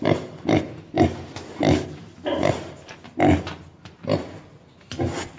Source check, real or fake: real